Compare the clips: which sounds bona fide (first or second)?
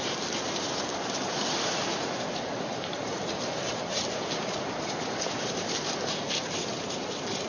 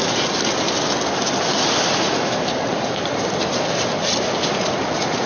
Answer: second